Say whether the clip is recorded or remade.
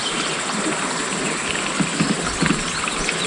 recorded